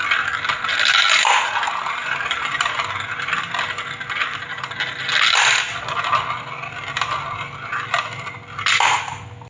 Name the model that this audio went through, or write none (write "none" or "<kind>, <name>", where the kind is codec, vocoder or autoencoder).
none